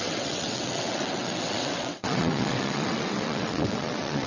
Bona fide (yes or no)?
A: no